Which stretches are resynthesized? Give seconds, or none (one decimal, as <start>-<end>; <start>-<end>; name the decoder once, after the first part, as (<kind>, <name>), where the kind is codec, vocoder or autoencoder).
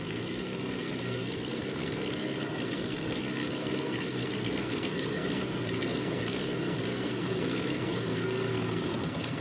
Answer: 0.0-9.4 (codec, SNAC)